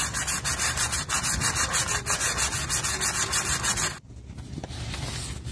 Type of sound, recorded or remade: recorded